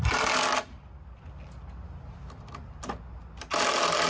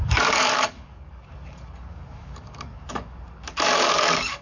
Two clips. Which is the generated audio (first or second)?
second